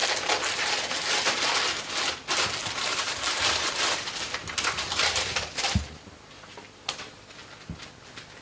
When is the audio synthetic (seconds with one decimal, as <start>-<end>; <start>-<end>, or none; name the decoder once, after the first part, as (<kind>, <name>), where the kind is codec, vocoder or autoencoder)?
2.6-5.3 (vocoder, BigVGAN v2)